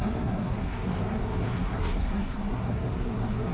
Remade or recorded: remade